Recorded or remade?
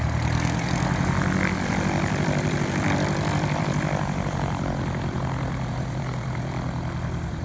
remade